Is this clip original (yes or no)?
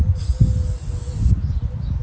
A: yes